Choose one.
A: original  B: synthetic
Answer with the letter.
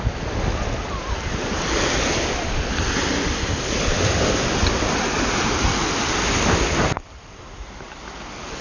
A